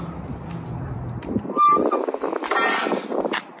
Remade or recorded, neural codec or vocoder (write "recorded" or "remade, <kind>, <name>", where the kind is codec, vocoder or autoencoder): remade, vocoder, BigVGAN v2